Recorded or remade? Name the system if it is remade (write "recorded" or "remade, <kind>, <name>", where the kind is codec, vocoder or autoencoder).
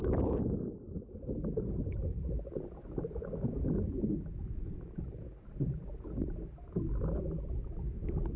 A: recorded